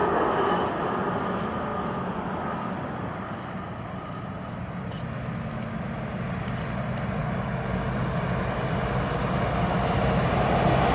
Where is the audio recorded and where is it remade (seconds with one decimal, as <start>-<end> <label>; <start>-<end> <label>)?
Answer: 0.0-10.9 recorded